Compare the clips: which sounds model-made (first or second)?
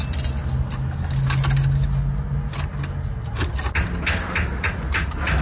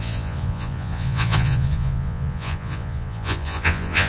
second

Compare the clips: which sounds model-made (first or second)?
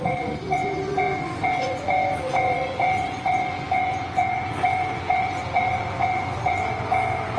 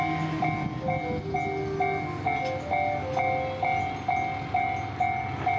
first